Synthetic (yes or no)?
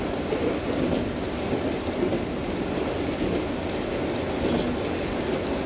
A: no